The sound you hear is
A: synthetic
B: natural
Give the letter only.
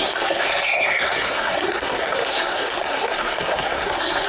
A